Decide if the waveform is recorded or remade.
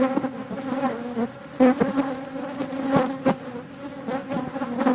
recorded